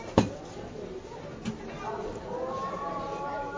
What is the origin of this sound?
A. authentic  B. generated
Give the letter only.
A